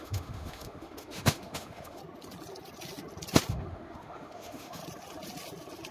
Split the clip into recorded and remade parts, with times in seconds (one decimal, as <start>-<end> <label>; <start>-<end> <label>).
0.0-2.0 remade; 2.0-3.5 recorded; 3.5-4.8 remade; 4.8-5.9 recorded

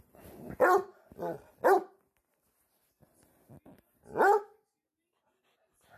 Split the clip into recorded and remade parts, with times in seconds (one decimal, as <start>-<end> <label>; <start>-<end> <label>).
0.0-6.0 recorded

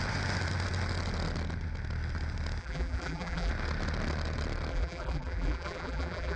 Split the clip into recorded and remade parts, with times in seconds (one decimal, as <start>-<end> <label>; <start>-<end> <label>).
0.0-2.6 recorded; 2.6-3.5 remade; 3.5-4.7 recorded; 4.7-6.4 remade

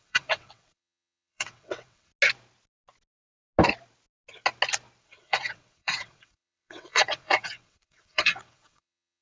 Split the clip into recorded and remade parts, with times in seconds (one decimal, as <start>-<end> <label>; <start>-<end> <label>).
0.0-2.1 remade; 2.1-5.0 recorded; 5.0-9.2 remade

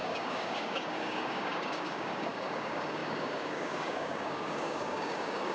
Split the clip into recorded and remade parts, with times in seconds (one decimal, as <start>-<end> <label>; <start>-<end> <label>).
0.0-5.5 remade

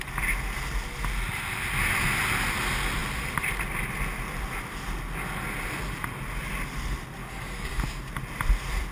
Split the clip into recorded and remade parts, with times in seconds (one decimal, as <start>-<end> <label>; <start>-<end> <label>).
0.0-7.2 recorded; 7.2-7.8 remade; 7.8-8.9 recorded

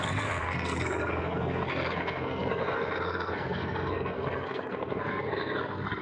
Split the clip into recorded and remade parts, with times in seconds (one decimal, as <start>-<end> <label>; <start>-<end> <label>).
0.0-6.0 remade